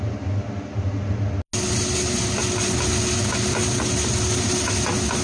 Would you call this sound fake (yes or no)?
no